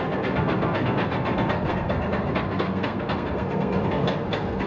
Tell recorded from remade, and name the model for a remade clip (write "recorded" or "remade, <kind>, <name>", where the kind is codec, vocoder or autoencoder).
remade, codec, SNAC